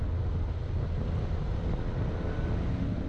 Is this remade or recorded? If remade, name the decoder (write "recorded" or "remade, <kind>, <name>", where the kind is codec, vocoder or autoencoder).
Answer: recorded